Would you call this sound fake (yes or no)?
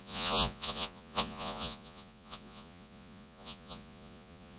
yes